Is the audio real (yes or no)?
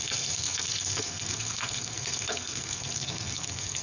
no